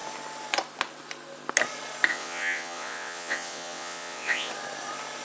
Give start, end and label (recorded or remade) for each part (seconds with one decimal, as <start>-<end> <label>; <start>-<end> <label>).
0.0-2.1 recorded; 2.1-4.5 remade; 4.5-5.2 recorded